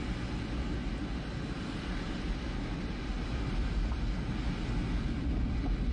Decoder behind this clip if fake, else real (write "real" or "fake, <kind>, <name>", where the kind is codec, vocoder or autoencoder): real